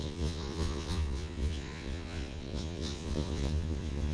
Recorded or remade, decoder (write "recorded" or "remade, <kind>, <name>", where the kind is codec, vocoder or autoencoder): remade, vocoder, Vocos